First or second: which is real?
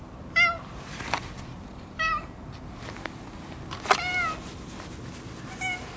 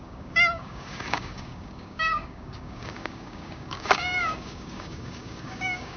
first